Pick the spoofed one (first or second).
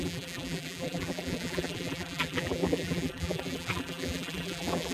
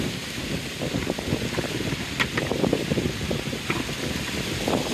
first